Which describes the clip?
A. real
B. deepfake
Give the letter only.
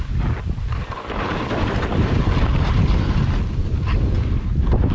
A